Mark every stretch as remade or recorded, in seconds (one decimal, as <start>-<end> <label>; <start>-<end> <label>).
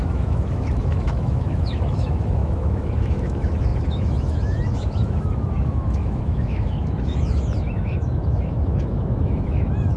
0.0-10.0 remade